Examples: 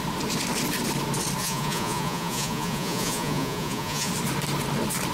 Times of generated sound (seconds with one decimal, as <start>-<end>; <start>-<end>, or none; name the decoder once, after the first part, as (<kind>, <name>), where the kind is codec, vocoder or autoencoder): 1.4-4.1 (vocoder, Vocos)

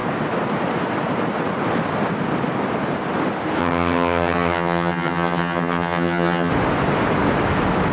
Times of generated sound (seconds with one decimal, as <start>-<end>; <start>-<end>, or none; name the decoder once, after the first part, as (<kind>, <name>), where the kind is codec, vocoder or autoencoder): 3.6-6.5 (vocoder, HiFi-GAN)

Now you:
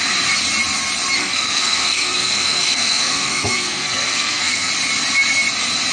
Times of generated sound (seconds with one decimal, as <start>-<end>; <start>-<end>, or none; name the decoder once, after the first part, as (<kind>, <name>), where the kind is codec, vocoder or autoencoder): 1.2-4.7 (codec, SNAC)